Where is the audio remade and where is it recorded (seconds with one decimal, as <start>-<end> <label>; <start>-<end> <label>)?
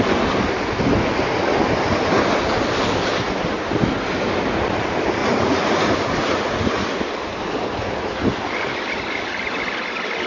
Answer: 0.0-5.2 recorded; 5.2-6.8 remade; 6.8-10.3 recorded